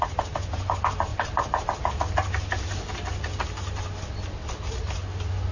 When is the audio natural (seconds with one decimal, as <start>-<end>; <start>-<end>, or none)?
0.0-5.5